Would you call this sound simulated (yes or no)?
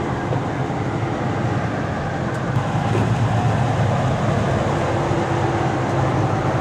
no